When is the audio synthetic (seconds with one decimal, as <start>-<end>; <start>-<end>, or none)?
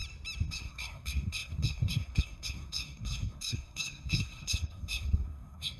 0.5-5.8